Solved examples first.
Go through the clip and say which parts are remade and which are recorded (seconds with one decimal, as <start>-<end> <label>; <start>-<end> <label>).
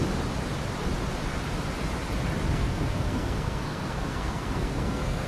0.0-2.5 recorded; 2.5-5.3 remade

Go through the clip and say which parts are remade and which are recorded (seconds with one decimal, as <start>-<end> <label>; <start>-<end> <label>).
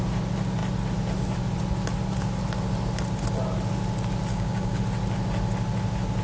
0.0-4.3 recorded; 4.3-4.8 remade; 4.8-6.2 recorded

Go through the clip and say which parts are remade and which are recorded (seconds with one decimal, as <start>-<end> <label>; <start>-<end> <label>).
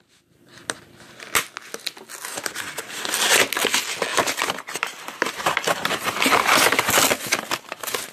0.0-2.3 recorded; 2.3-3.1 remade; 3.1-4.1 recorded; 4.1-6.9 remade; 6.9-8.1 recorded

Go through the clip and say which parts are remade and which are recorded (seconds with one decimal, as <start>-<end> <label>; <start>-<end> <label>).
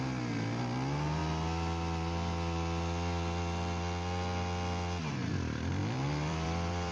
0.0-5.8 recorded; 5.8-6.9 remade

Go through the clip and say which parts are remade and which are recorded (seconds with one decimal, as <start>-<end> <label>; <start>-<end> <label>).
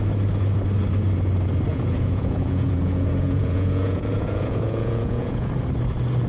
0.0-1.7 recorded; 1.7-5.5 remade; 5.5-6.3 recorded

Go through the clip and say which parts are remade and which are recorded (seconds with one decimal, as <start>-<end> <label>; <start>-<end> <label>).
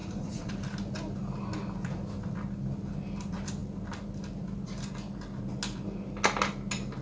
0.0-0.5 remade; 0.5-7.0 recorded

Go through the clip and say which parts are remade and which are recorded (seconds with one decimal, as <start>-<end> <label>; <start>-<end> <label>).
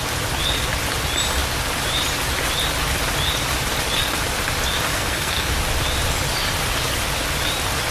0.0-4.9 recorded; 4.9-5.5 remade; 5.5-7.9 recorded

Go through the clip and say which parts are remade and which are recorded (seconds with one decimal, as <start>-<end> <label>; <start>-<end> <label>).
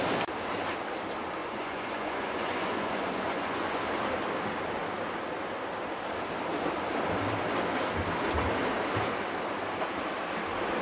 0.0-1.4 recorded; 1.4-3.8 remade; 3.8-10.8 recorded